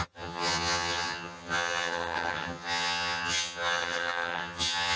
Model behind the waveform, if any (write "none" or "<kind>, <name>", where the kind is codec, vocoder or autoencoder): vocoder, HiFi-GAN